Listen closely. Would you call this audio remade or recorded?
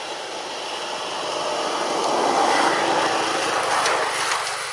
recorded